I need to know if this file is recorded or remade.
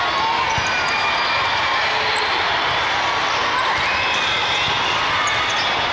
recorded